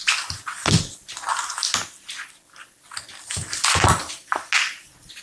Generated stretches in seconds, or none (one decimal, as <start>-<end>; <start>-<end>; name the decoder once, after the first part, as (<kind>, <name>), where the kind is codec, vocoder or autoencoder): none